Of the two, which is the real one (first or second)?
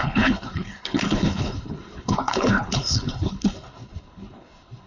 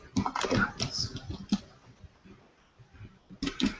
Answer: second